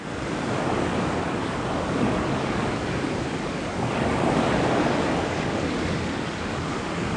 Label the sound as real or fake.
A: fake